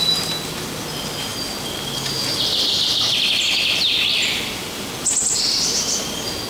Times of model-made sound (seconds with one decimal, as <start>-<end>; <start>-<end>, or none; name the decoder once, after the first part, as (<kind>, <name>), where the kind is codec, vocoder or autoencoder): none